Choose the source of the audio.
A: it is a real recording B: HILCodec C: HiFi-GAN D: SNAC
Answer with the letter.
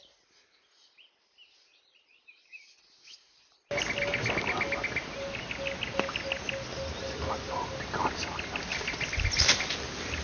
A